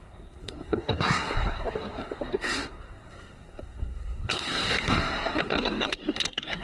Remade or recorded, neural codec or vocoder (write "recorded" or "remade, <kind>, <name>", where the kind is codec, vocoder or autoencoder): remade, codec, SNAC